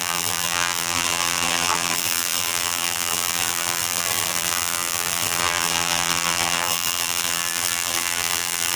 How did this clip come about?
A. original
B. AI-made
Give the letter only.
B